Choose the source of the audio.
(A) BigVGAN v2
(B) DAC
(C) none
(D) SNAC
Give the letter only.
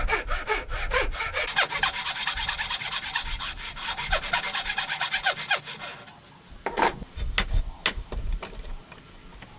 C